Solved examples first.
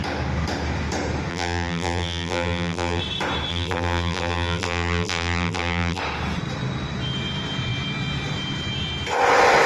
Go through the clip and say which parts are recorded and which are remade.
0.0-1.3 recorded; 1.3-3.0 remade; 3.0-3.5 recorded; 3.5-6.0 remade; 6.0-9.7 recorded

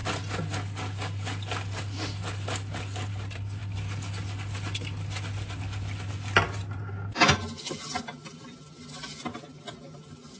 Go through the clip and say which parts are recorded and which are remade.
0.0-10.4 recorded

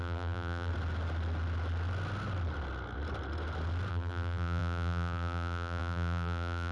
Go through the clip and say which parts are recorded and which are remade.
0.0-0.7 remade; 0.7-3.9 recorded; 3.9-6.7 remade

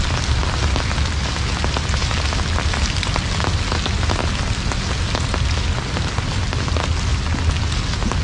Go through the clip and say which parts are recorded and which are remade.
0.0-8.2 recorded

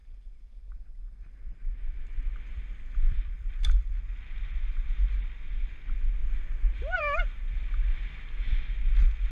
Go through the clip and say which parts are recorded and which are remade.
0.0-4.0 remade; 4.0-6.2 recorded; 6.2-8.6 remade; 8.6-9.3 recorded

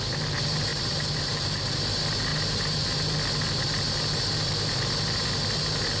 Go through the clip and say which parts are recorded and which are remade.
0.0-0.7 recorded; 0.7-1.8 remade; 1.8-6.0 recorded